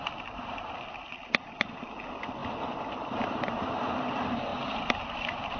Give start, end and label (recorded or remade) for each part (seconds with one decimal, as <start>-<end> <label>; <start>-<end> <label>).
0.0-2.4 recorded; 2.4-3.9 remade; 3.9-4.5 recorded; 4.5-5.6 remade